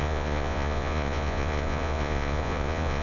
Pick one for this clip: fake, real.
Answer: fake